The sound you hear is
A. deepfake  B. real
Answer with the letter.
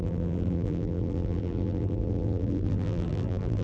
A